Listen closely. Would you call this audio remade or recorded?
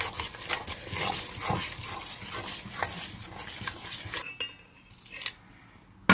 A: recorded